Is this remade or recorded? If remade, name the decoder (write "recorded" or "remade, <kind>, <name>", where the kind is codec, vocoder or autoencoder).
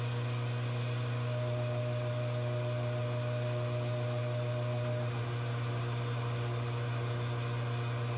recorded